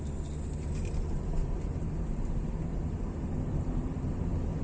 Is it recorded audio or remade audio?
remade